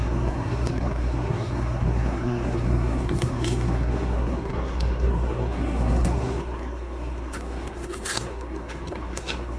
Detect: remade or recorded remade